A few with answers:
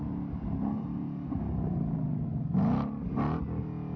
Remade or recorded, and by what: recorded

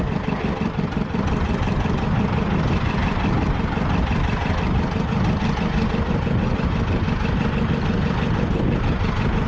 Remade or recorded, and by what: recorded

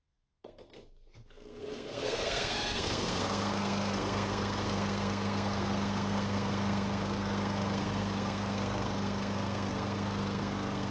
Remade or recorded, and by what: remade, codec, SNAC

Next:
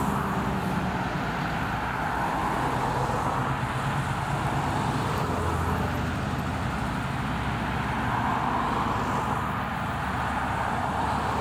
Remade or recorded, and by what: recorded